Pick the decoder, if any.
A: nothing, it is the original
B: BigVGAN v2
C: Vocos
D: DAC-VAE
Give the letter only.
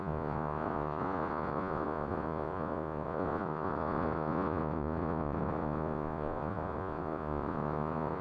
C